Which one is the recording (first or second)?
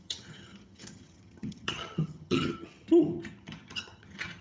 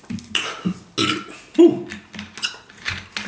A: second